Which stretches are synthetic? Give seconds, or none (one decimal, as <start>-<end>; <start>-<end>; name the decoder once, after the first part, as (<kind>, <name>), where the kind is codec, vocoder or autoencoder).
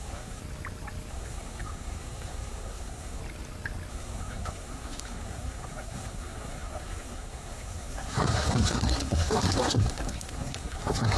0.0-0.4 (codec, SNAC); 1.1-3.2; 3.9-11.2